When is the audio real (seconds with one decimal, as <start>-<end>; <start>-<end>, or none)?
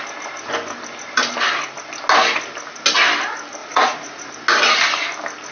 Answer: 0.0-3.6; 4.3-5.5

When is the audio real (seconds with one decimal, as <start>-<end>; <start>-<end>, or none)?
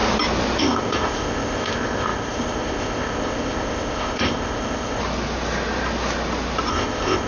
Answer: 0.0-0.6; 5.0-6.7